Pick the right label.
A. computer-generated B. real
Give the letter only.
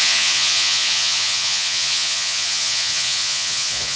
A